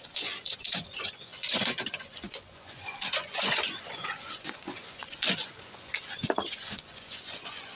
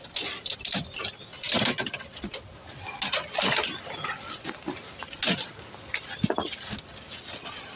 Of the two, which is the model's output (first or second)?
first